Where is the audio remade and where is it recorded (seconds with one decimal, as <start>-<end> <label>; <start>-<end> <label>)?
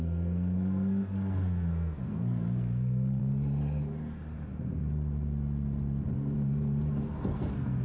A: 0.0-3.2 remade; 3.2-7.1 recorded; 7.1-7.8 remade